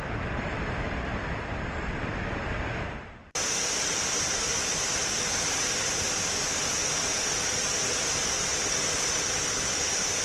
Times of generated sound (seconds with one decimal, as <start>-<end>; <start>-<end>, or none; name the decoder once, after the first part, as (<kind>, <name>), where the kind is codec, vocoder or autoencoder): 0.0-6.8 (vocoder, BigVGAN v2); 7.8-10.2

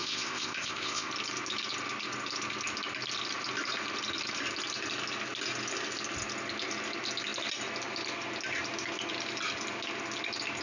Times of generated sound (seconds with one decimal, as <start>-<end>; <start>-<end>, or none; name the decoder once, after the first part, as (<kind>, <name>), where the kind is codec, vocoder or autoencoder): 0.0-1.1 (codec, ZipCodec)

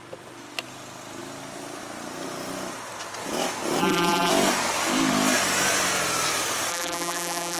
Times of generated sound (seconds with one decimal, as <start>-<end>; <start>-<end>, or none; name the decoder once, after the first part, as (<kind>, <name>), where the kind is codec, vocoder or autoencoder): 3.8-4.3 (vocoder, BigVGAN v2); 6.7-7.6